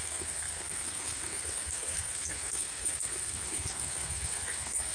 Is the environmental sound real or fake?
fake